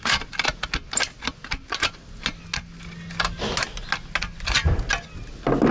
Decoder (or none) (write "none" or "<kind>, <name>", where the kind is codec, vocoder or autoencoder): none